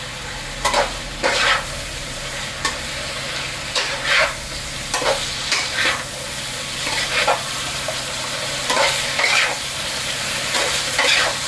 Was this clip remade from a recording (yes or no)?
yes